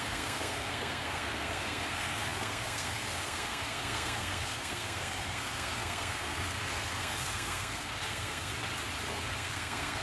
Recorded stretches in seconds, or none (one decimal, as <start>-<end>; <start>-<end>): 8.5-9.1